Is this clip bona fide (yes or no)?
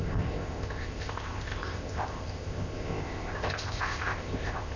no